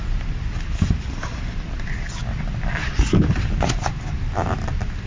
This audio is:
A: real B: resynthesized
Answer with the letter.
A